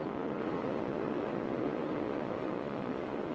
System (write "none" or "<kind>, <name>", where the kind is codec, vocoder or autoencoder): vocoder, Vocos